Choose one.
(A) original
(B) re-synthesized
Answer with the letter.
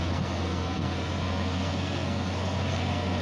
B